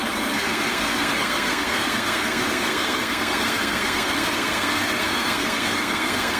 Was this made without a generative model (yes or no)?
no